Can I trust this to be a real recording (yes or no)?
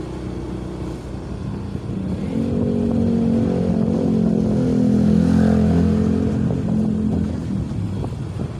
yes